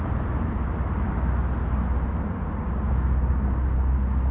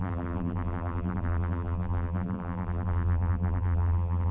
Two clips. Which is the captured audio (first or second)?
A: first